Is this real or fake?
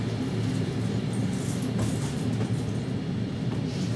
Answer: real